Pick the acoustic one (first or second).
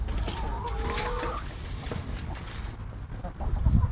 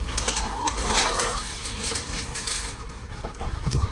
first